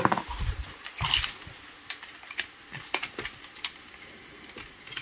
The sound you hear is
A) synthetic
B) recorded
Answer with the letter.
B